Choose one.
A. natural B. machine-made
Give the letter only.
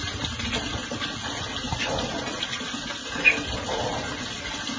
A